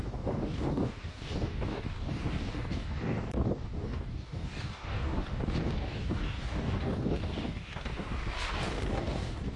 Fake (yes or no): yes